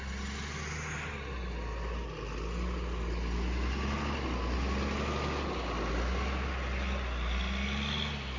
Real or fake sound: real